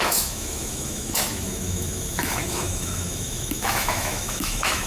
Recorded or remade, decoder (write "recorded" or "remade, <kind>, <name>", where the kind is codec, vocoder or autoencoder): remade, autoencoder, DAC-VAE